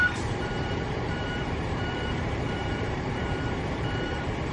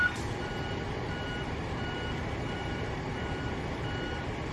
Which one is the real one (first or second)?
second